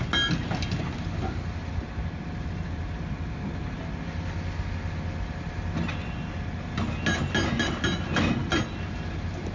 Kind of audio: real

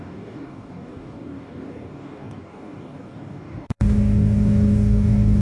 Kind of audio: fake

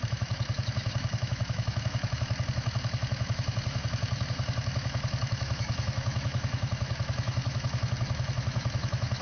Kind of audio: fake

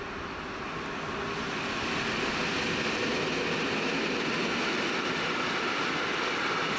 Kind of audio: real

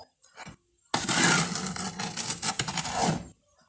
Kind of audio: real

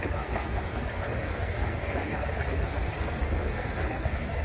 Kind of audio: fake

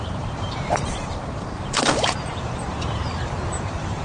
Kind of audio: fake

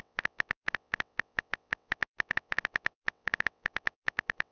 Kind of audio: fake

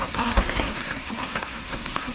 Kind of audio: fake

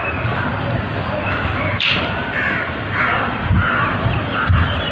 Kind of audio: fake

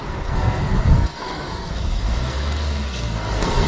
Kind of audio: fake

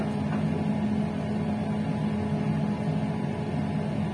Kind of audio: real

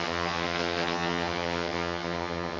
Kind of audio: fake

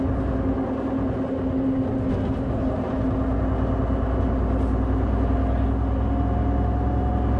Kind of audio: real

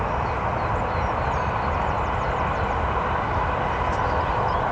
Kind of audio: real